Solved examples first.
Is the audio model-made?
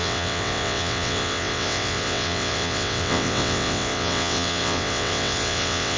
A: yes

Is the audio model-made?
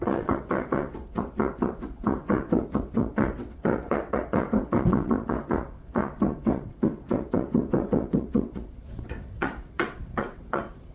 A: yes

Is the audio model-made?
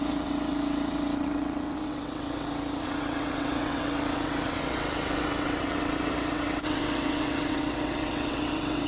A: yes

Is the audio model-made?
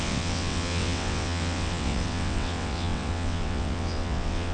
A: yes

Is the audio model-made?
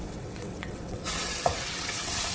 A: yes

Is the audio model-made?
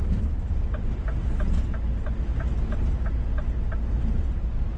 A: no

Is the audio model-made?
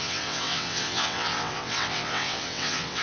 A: yes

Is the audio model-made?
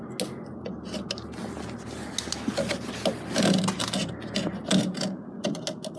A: no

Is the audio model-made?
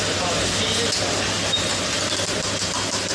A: no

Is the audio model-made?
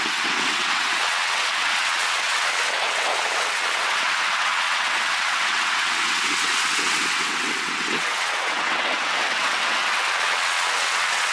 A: yes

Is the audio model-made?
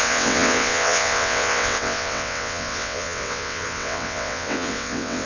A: yes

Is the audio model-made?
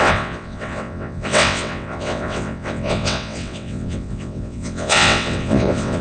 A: yes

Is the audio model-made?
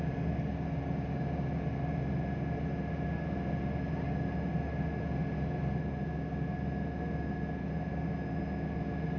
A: no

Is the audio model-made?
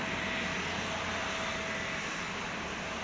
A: no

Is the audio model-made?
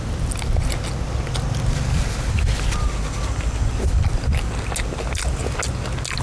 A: no